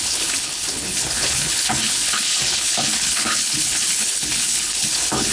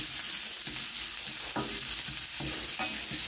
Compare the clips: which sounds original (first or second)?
second